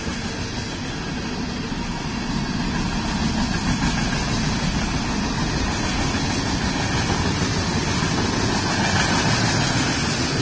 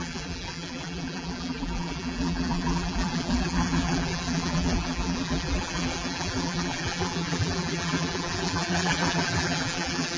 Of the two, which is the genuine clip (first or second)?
first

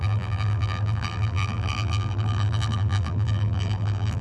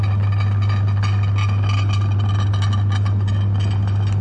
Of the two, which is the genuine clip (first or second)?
second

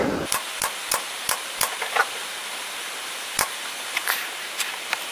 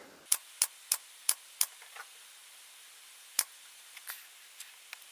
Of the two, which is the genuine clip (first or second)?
second